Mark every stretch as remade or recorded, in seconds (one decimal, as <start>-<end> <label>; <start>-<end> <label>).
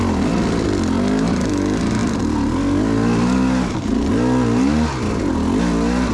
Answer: 0.0-6.1 recorded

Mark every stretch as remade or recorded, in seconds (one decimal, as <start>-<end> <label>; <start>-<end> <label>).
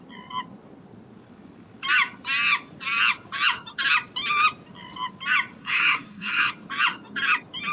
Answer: 0.0-5.6 recorded; 5.6-6.5 remade; 6.5-7.7 recorded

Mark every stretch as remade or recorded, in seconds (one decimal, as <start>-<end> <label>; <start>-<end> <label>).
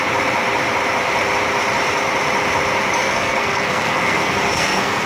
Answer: 0.0-3.0 recorded; 3.0-5.1 remade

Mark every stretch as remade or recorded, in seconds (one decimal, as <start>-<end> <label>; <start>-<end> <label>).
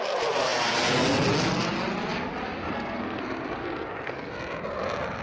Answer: 0.0-2.6 recorded; 2.6-3.2 remade; 3.2-3.6 recorded; 3.6-4.3 remade; 4.3-5.2 recorded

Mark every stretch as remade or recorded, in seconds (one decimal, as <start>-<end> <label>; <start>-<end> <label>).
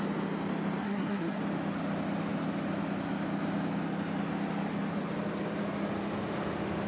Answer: 0.0-0.8 recorded; 0.8-1.4 remade; 1.4-6.9 recorded